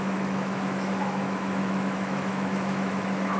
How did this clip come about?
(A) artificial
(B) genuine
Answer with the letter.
A